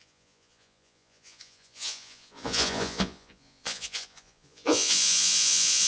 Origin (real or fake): fake